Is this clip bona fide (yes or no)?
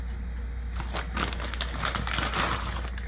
yes